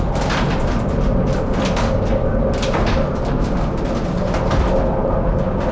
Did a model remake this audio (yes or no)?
no